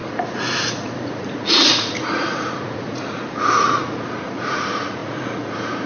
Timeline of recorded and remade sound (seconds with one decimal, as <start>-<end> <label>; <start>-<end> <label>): 0.0-5.9 remade